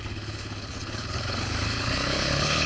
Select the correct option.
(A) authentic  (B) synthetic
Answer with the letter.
B